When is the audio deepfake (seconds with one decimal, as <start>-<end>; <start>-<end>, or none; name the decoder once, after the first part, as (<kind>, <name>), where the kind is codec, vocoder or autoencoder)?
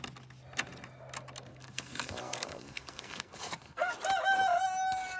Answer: 1.5-3.9 (codec, SNAC)